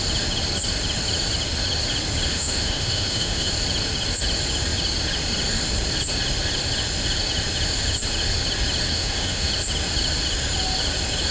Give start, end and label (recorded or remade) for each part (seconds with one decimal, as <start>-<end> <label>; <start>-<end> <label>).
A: 0.0-2.3 recorded; 2.3-3.5 remade; 3.5-8.9 recorded; 8.9-9.5 remade; 9.5-11.3 recorded